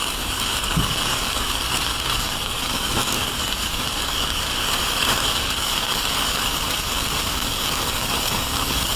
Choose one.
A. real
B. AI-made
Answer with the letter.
B